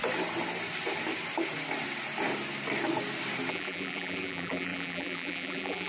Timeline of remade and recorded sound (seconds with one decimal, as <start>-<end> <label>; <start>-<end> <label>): 0.0-3.5 recorded; 3.5-5.9 remade